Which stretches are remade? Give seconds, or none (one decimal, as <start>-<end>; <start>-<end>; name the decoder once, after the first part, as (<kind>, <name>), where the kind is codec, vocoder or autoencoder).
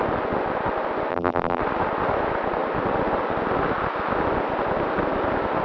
1.1-1.6 (vocoder, BigVGAN v2)